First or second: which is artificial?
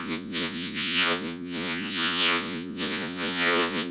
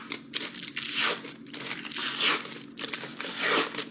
first